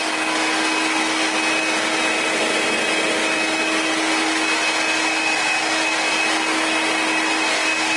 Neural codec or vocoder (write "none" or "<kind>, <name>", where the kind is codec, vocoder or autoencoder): none